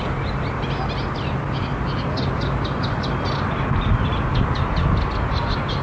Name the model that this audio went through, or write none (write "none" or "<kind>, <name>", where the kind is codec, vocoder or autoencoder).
none